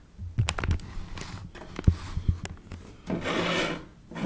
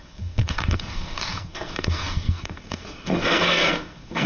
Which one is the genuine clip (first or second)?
first